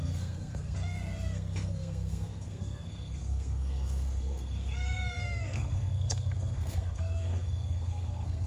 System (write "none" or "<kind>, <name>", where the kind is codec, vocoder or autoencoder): codec, SNAC